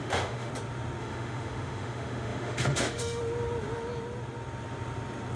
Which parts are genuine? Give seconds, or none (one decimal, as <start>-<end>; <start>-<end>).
0.5-1.0; 3.2-5.4